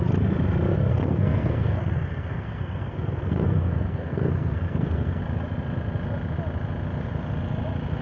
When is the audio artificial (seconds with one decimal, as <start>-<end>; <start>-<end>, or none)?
0.9-5.2

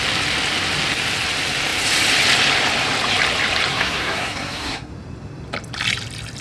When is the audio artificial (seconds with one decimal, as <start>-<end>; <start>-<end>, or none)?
3.7-4.9

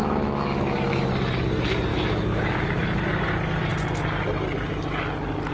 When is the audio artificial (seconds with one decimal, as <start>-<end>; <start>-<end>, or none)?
0.0-1.0; 1.9-3.0

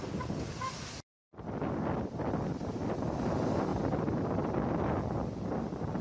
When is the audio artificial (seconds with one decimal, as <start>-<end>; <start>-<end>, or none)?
3.7-4.6

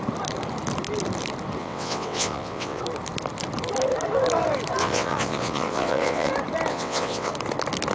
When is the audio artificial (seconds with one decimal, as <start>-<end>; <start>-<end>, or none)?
1.6-2.8; 4.8-6.3; 6.7-7.3

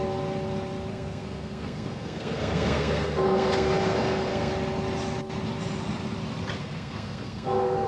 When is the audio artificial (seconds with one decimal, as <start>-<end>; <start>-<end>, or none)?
0.9-4.5; 6.6-7.9